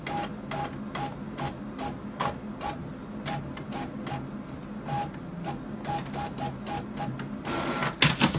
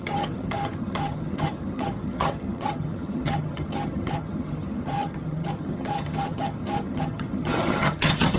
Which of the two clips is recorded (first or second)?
first